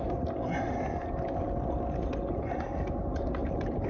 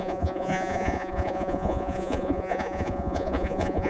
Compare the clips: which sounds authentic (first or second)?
first